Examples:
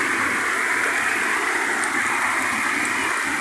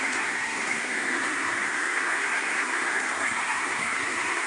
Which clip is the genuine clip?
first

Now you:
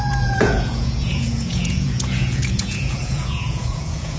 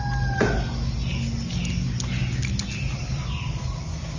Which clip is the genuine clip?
second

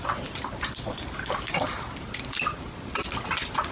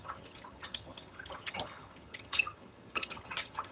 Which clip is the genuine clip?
first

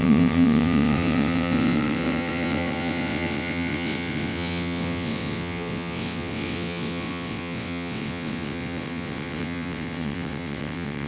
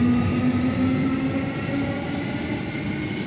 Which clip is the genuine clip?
second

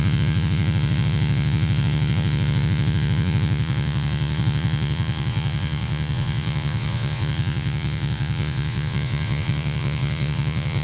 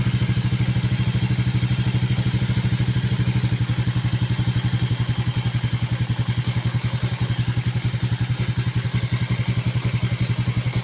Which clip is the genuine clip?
second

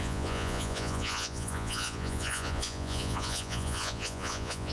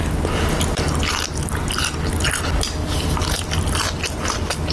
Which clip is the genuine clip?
second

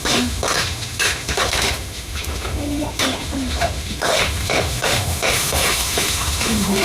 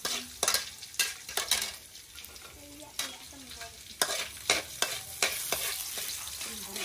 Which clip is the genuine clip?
second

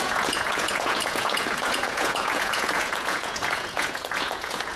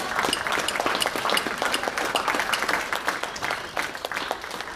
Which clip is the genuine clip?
second